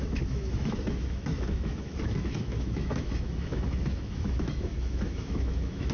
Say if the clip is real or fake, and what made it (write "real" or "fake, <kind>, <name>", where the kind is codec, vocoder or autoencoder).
fake, autoencoder, DAC-VAE